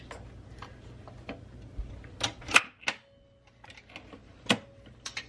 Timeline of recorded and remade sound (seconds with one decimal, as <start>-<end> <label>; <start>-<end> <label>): 0.0-4.2 recorded; 4.2-5.3 remade